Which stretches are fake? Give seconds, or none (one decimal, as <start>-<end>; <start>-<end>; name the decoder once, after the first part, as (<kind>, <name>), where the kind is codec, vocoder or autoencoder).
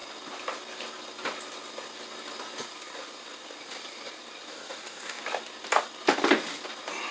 4.5-5.2 (codec, DAC)